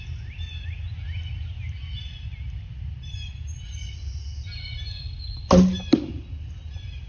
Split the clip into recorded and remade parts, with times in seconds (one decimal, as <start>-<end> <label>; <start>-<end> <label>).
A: 0.0-7.1 recorded

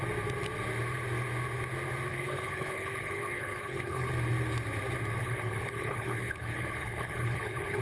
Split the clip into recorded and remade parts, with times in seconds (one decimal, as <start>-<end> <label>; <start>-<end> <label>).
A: 0.0-2.1 recorded; 2.1-4.1 remade; 4.1-5.2 recorded; 5.2-7.8 remade

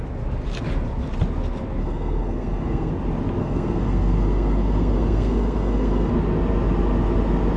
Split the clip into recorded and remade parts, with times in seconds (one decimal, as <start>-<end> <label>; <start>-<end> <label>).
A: 0.0-1.8 recorded; 1.8-2.9 remade; 2.9-3.4 recorded; 3.4-6.1 remade; 6.1-7.6 recorded

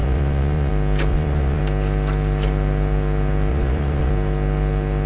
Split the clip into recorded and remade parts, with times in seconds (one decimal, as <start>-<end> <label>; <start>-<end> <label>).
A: 0.0-0.7 remade; 0.7-1.1 recorded; 1.1-1.6 remade; 1.6-3.5 recorded; 3.5-4.1 remade; 4.1-5.1 recorded

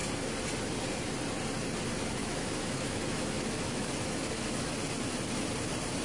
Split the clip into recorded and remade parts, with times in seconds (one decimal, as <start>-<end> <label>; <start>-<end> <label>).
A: 0.0-2.2 recorded; 2.2-4.8 remade; 4.8-6.0 recorded

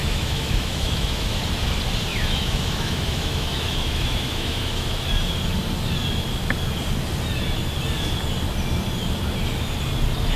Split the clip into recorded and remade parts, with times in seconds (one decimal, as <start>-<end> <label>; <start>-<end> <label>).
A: 0.0-1.4 remade; 1.4-2.1 recorded; 2.1-5.1 remade; 5.1-10.4 recorded